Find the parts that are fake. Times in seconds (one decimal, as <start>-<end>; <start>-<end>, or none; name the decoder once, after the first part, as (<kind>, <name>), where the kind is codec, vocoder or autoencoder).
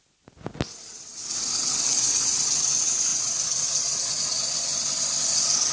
1.9-2.4 (vocoder, Vocos); 3.1-4.2